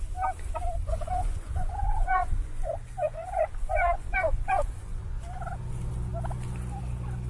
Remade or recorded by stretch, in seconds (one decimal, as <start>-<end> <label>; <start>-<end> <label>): 0.0-0.8 recorded; 0.8-5.2 remade; 5.2-7.3 recorded